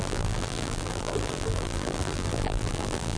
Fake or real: fake